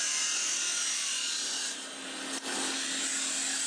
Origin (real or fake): real